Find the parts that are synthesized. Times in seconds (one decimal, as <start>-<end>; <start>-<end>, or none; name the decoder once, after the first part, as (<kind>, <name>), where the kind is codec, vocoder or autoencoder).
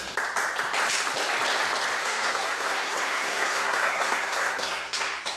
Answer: 2.0-5.4 (codec, SNAC)